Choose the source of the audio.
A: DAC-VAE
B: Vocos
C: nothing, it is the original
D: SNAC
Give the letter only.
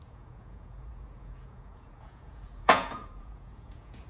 B